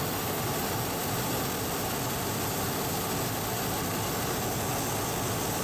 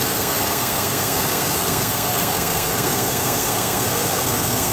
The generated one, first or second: second